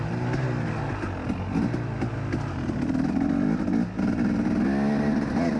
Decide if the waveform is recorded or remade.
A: recorded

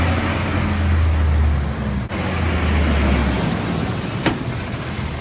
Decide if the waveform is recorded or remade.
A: recorded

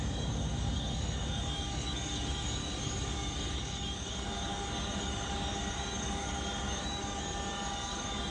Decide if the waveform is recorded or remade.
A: remade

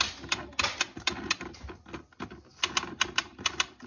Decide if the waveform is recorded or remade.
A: recorded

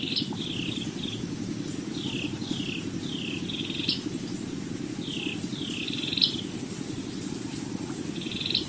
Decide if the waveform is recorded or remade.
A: recorded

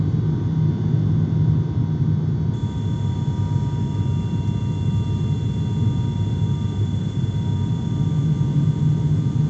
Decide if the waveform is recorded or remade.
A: recorded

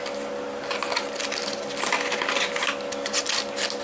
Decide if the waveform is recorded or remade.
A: recorded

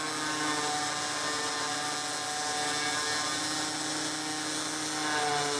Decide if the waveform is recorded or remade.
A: recorded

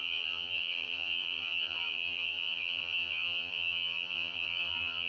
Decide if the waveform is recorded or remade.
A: remade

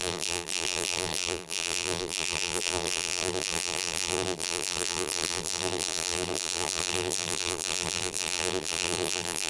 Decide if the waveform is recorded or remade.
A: remade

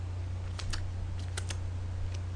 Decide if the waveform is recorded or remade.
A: recorded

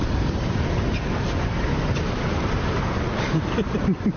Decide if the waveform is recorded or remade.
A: remade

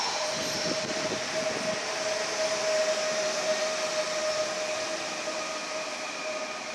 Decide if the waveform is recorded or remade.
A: recorded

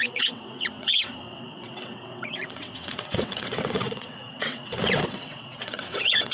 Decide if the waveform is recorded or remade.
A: remade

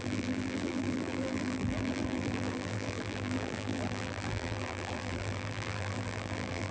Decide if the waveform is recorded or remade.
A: remade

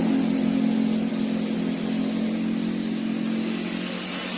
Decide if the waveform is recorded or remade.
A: recorded